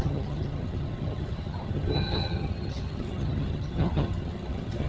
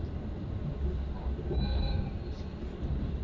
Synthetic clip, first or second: first